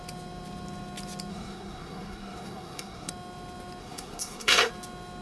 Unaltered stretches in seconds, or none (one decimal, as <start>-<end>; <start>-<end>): 0.0-1.3; 3.1-3.8; 4.7-5.2